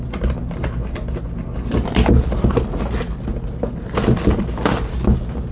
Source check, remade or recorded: recorded